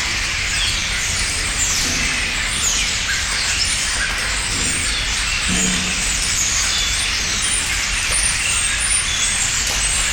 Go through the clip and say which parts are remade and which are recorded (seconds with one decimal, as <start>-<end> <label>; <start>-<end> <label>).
0.0-10.1 recorded